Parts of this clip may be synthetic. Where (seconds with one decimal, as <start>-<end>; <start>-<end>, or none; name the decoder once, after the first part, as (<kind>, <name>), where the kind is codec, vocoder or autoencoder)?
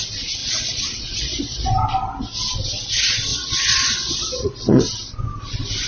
0.4-1.7 (vocoder, Vocos); 3.3-4.8